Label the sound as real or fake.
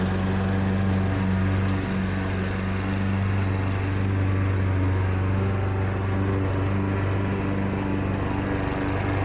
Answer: real